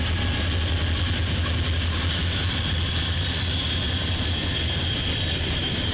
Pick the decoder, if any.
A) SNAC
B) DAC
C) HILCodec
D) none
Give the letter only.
D